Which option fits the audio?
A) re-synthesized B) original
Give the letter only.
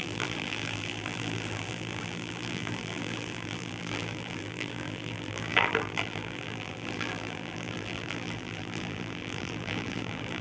A